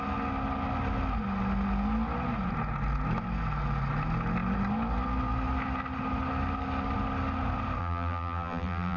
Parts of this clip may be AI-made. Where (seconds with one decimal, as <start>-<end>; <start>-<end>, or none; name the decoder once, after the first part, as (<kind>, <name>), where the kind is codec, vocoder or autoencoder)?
7.8-9.0 (vocoder, BigVGAN v2)